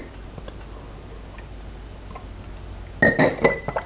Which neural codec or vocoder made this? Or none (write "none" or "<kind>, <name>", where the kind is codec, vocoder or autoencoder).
none